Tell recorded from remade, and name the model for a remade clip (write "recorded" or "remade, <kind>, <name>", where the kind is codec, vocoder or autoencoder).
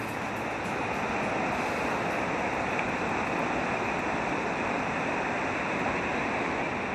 recorded